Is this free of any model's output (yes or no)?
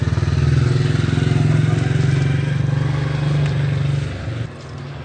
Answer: yes